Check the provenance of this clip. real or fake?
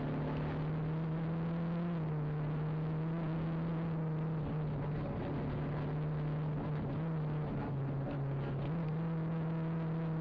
real